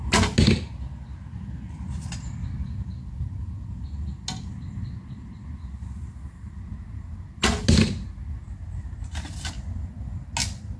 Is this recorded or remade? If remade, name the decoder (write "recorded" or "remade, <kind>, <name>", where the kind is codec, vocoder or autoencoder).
recorded